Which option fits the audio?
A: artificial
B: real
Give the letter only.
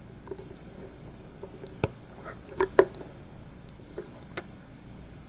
A